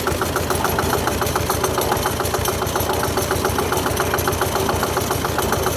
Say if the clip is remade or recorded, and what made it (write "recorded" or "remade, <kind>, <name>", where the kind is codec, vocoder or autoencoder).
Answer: recorded